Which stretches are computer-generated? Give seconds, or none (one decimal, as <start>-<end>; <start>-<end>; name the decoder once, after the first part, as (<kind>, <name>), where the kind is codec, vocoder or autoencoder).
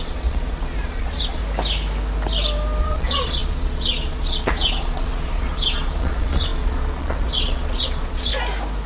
0.0-1.4 (vocoder, Vocos); 2.8-8.3